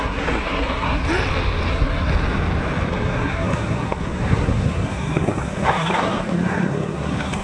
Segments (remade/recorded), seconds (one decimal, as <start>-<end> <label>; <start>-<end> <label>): 0.0-1.0 remade; 1.0-1.7 recorded; 1.7-2.1 remade; 2.1-2.9 recorded; 2.9-7.4 remade